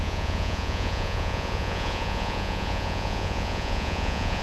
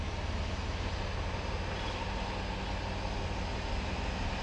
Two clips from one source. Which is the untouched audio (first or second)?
second